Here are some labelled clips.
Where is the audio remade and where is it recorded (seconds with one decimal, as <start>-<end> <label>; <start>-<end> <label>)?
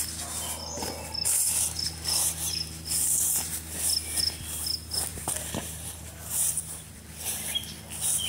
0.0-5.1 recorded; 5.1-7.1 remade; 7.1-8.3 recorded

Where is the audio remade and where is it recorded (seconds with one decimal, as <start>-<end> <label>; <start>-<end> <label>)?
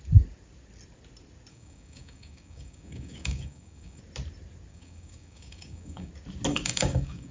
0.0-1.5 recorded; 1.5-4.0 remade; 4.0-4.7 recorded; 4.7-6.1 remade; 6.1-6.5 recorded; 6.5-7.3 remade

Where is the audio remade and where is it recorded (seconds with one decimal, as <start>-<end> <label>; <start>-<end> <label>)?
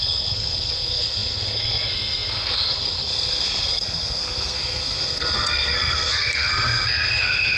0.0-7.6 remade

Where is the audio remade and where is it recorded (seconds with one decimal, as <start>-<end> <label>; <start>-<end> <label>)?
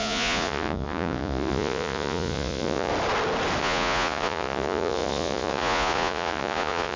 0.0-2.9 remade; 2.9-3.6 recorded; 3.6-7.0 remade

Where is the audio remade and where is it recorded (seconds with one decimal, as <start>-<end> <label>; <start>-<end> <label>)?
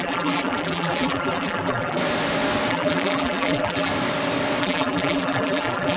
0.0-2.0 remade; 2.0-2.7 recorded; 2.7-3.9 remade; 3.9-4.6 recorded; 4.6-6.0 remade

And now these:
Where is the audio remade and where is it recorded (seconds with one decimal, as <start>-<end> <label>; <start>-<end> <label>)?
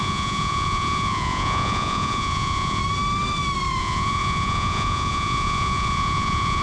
0.0-2.8 remade; 2.8-3.8 recorded; 3.8-6.6 remade